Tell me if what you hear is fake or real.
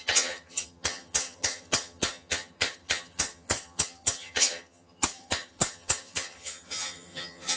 fake